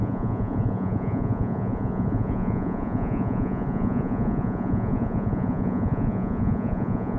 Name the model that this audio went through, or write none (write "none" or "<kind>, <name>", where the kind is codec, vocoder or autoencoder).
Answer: vocoder, Vocos